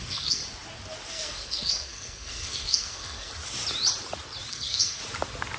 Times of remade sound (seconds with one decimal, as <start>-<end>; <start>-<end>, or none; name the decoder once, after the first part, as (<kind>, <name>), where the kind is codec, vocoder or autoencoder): 0.0-0.4 (codec, SNAC); 1.1-3.3; 4.5-5.0